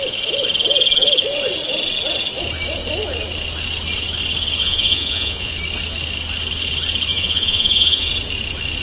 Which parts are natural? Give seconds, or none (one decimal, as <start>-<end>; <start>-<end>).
0.0-4.6; 5.5-7.1; 8.1-8.8